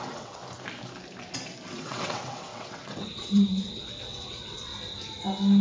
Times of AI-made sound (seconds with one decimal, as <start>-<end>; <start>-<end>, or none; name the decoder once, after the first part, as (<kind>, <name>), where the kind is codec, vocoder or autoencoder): 0.0-0.4 (vocoder, WaveNeXt); 1.7-4.7